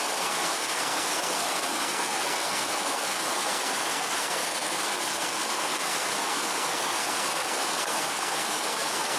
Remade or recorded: remade